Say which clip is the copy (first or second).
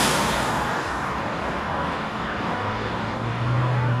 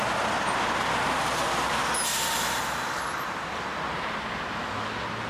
first